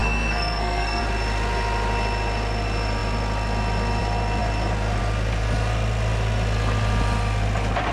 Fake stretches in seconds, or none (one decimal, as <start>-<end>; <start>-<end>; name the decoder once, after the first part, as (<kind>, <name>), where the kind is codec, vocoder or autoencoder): 0.0-1.0 (codec, SNAC)